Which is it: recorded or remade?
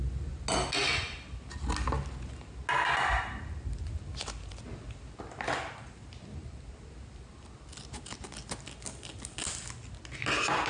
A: recorded